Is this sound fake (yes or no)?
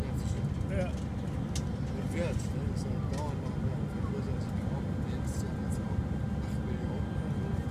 no